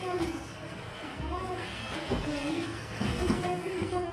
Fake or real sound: fake